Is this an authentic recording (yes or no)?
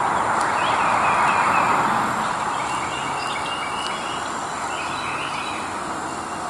yes